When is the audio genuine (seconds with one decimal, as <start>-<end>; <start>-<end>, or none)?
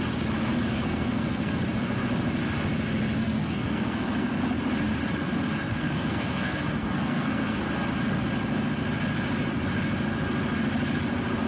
0.0-0.7; 1.6-3.2; 4.4-5.7; 7.6-11.5